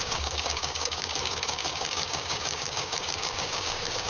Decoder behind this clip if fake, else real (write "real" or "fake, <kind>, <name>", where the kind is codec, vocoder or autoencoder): fake, codec, DAC